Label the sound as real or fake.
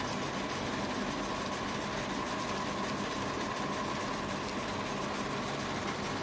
real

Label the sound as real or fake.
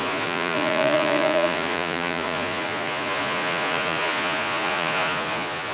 fake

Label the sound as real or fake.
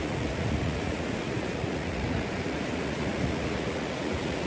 fake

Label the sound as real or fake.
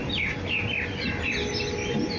real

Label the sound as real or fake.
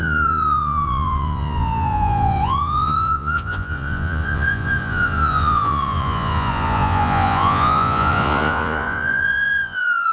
fake